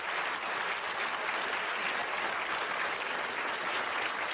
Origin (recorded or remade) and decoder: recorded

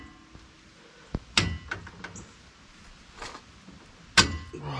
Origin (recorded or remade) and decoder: recorded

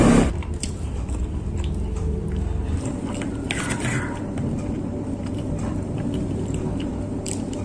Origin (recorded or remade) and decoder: remade, vocoder, BigVGAN v2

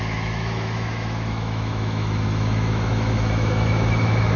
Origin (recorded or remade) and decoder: remade, autoencoder, DAC-VAE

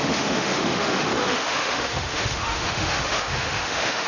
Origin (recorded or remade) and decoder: remade, autoencoder, DAC-VAE